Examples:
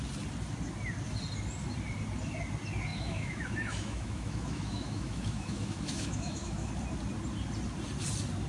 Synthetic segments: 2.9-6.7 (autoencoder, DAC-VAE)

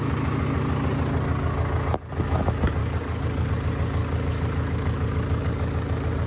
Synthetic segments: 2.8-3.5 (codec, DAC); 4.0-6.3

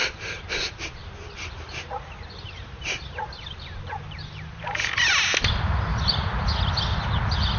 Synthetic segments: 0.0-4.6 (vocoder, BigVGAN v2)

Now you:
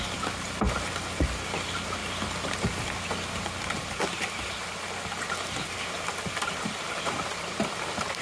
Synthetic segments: none

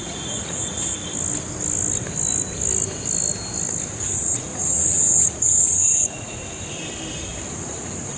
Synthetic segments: 0.0-1.0 (vocoder, Vocos); 3.9-6.4; 7.5-8.2